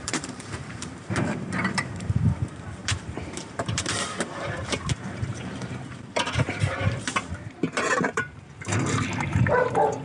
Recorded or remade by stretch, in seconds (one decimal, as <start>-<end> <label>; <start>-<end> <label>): 0.0-10.0 remade